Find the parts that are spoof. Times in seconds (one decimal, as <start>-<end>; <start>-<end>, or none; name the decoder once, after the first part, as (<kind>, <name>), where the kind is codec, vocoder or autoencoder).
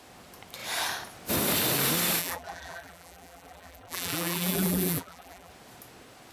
2.2-5.5 (vocoder, BigVGAN v2)